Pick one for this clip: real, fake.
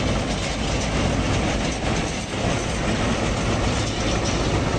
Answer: real